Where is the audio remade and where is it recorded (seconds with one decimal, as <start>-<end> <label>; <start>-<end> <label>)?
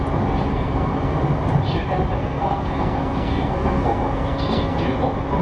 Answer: 0.0-0.5 recorded; 0.5-1.2 remade; 1.2-2.2 recorded; 2.2-4.8 remade; 4.8-5.4 recorded